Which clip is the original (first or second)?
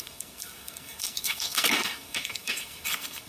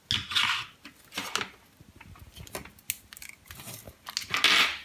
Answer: second